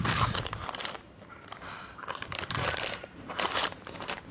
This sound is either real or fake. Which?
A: fake